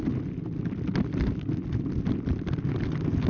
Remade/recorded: recorded